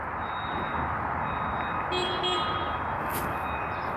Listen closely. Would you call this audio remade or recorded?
recorded